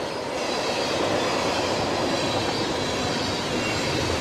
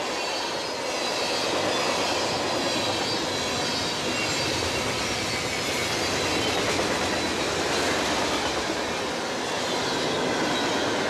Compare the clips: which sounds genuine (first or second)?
second